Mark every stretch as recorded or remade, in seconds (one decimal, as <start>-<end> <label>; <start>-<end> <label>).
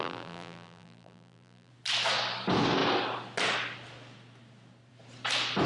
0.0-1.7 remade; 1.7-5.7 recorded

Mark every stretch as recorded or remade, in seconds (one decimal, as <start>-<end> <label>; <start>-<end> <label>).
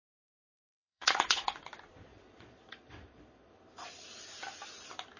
0.0-1.6 remade; 1.6-2.1 recorded; 2.1-3.5 remade; 3.5-5.2 recorded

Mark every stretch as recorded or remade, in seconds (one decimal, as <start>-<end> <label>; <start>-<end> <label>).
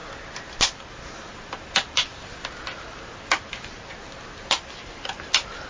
0.0-5.7 recorded